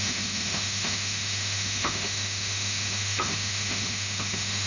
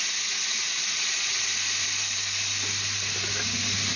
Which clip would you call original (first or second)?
second